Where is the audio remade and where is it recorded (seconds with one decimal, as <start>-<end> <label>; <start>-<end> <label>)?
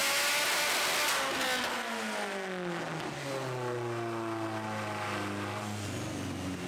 0.0-6.7 recorded